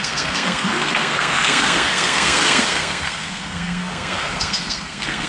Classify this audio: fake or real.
fake